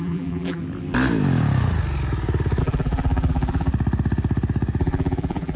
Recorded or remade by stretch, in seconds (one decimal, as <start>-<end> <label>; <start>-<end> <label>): 0.0-0.6 remade; 0.6-2.6 recorded; 2.6-3.7 remade; 3.7-4.8 recorded; 4.8-5.6 remade